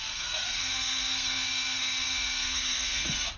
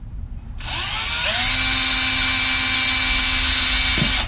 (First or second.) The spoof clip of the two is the first